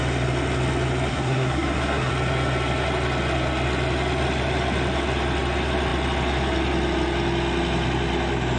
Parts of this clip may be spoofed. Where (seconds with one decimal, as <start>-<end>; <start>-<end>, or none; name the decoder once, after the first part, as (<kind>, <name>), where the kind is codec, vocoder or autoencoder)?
1.1-2.1 (codec, SNAC)